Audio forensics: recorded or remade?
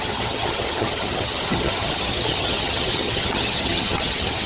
remade